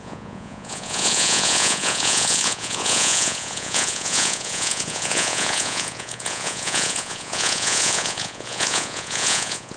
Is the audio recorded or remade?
remade